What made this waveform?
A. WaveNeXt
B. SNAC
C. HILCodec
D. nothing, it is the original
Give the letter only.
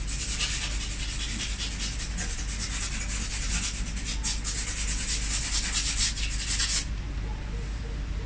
D